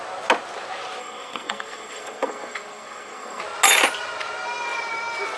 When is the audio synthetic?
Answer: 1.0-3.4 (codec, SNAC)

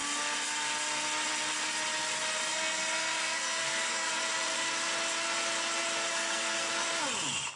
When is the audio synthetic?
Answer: 2.5-4.1 (codec, SNAC); 6.1-6.7

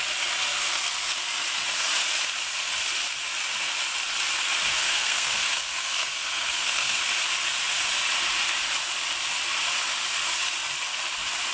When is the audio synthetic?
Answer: 4.8-7.0 (codec, SNAC)

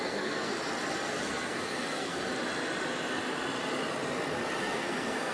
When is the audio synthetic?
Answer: 0.0-0.5 (codec, SNAC); 1.1-2.3; 4.6-5.3

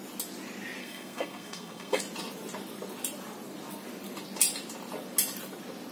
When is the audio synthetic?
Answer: 0.8-2.0 (codec, SNAC)

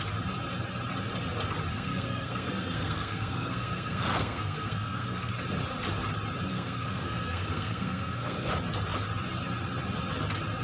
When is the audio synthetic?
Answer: 1.7-5.3 (codec, SNAC); 6.5-8.5

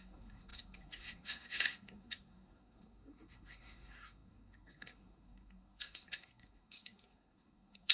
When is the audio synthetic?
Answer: 0.0-7.9 (codec, SNAC)

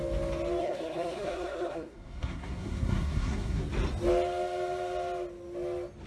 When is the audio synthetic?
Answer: 0.6-3.6 (codec, SNAC)